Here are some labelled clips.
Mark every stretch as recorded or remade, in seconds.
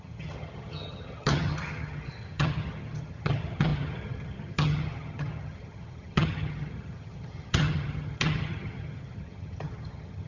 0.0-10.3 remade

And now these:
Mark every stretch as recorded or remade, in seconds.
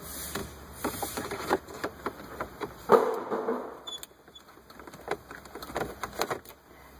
0.0-0.4 recorded; 0.4-2.8 remade; 2.8-7.0 recorded